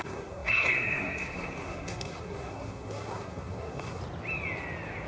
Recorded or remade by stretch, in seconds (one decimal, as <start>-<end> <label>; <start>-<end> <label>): 0.0-4.0 remade; 4.0-5.1 recorded